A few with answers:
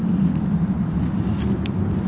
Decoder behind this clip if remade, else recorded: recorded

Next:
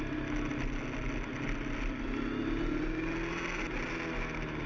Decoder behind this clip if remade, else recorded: recorded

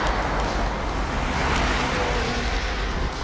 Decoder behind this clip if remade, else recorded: recorded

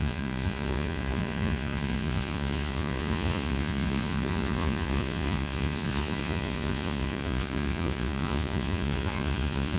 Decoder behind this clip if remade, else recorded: remade, vocoder, Vocos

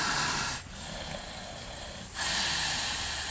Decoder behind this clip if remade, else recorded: recorded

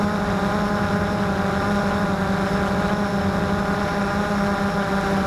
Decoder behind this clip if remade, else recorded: recorded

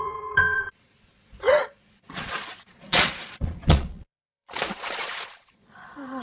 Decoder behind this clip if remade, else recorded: remade, vocoder, Vocos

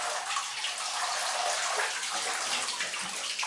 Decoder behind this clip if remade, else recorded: recorded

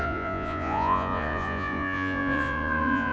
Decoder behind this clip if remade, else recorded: remade, vocoder, Vocos